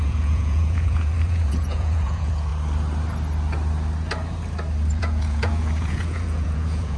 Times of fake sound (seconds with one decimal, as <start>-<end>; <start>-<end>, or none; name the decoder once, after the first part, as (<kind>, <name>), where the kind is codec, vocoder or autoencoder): 0.0-2.5 (vocoder, Vocos); 4.9-7.0